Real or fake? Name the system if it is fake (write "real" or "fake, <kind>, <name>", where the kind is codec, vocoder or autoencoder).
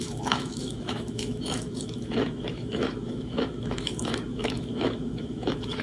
fake, autoencoder, DAC-VAE